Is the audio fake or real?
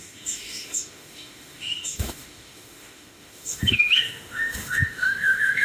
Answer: fake